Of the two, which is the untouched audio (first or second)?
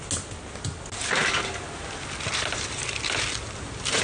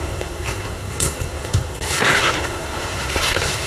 first